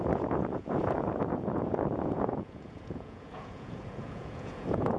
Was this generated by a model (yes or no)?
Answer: yes